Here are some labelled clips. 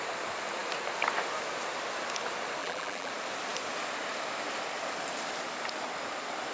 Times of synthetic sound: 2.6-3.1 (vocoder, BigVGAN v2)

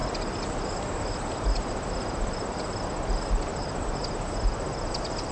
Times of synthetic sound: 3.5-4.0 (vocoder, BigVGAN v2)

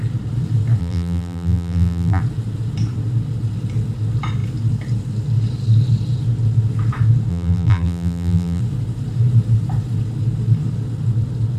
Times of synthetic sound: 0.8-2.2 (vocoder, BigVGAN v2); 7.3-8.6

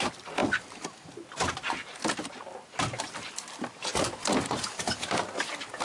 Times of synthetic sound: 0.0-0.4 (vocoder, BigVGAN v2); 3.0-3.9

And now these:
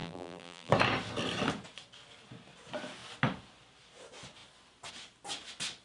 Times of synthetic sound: 0.0-0.7 (vocoder, BigVGAN v2)